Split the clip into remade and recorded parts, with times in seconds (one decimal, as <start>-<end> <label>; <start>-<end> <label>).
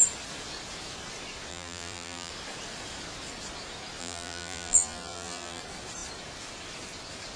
0.0-1.5 recorded; 1.5-2.3 remade; 2.3-4.0 recorded; 4.0-5.6 remade; 5.6-7.4 recorded